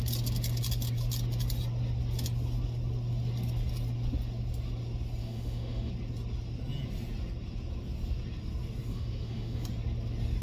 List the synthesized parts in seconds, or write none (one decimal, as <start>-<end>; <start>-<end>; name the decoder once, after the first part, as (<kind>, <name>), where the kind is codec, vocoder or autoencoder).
5.2-5.9 (autoencoder, DAC-VAE); 8.9-9.6